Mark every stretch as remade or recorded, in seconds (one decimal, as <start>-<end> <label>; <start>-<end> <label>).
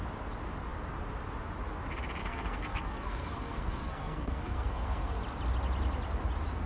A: 0.0-2.2 recorded; 2.2-5.2 remade; 5.2-6.7 recorded